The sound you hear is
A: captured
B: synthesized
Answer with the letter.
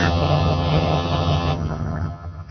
B